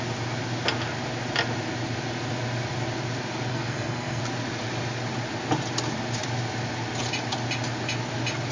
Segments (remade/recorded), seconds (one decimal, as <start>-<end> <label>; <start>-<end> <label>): 0.0-3.5 recorded; 3.5-4.2 remade; 4.2-8.5 recorded